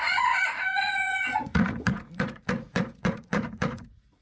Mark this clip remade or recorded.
remade